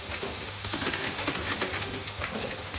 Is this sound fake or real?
fake